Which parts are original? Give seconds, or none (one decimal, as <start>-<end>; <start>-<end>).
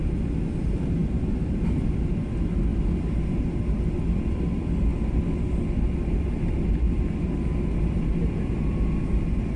0.0-9.6